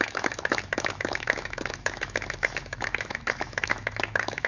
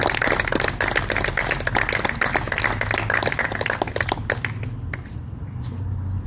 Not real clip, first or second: first